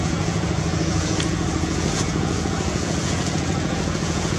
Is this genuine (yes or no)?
no